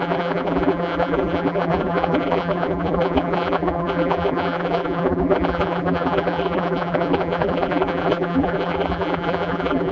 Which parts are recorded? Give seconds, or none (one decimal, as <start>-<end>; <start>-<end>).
none